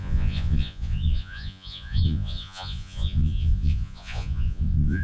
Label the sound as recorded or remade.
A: remade